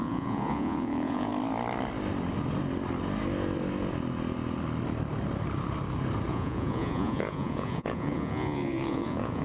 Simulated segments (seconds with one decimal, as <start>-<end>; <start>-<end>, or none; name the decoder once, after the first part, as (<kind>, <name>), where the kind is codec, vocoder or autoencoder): 0.0-1.3 (vocoder, Vocos); 6.3-9.4